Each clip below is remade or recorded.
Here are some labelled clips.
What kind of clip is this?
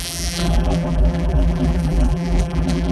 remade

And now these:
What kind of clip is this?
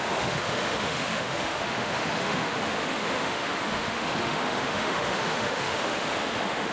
remade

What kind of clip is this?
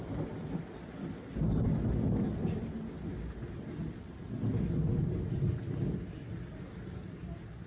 recorded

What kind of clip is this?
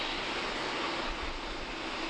recorded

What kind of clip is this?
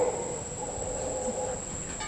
recorded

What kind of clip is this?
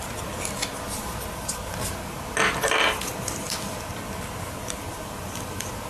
recorded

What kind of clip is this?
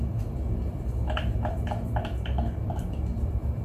remade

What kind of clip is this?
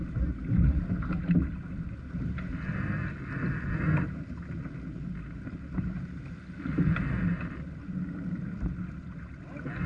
recorded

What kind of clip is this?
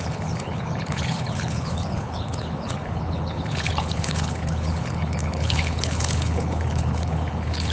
remade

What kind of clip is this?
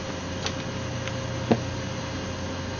recorded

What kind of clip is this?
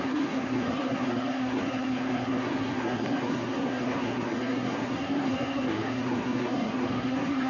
remade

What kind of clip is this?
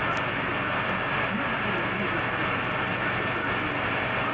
recorded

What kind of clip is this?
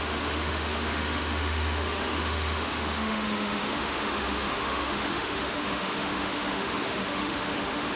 remade